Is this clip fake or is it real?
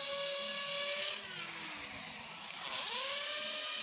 real